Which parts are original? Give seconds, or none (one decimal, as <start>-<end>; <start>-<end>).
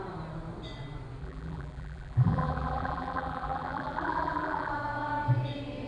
0.0-1.2; 4.7-5.9